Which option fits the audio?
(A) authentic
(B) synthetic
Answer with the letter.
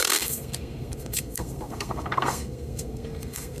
B